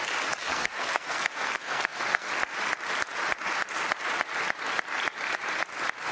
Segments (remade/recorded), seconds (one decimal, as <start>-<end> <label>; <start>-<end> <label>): 0.0-0.4 recorded; 0.4-2.3 remade; 2.3-6.1 recorded